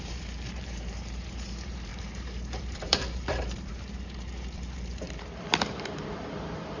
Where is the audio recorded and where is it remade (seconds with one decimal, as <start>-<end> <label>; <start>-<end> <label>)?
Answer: 0.0-6.8 remade